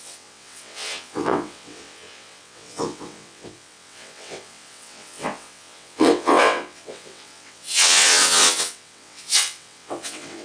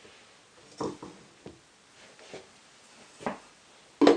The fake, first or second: first